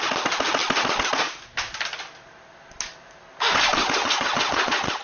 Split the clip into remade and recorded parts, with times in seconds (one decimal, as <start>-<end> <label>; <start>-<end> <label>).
0.0-3.7 recorded; 3.7-5.0 remade